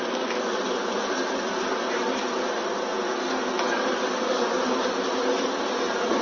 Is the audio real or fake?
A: real